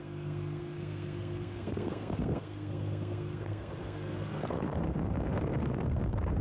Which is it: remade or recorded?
remade